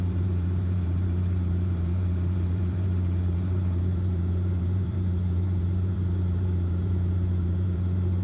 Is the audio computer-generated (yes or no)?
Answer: yes